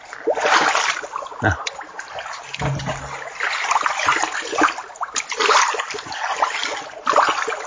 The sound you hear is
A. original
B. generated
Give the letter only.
A